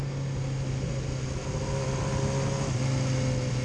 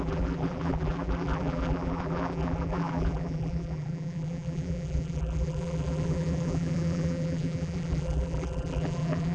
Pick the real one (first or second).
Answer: first